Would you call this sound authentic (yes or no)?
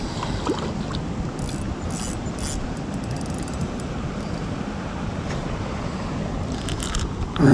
yes